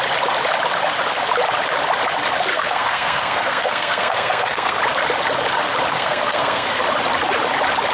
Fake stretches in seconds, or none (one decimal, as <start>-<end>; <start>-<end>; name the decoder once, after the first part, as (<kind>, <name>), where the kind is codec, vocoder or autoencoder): 2.5-4.8 (codec, SNAC); 5.9-6.8